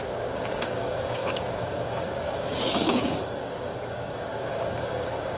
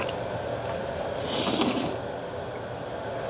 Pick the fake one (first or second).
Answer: first